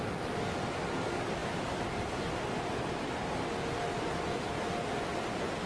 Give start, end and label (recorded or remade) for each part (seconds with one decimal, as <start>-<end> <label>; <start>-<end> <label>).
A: 0.0-5.7 recorded